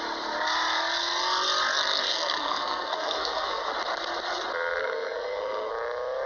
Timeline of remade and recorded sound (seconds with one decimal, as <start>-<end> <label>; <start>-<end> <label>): 0.0-2.1 recorded; 2.1-3.7 remade; 3.7-4.8 recorded; 4.8-5.7 remade; 5.7-6.3 recorded

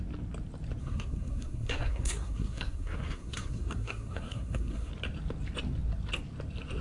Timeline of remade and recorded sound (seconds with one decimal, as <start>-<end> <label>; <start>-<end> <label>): 0.0-0.8 recorded; 0.8-4.9 remade; 4.9-6.8 recorded